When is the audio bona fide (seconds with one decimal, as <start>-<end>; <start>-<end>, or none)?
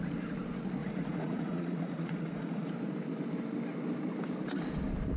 0.0-0.8; 2.7-5.2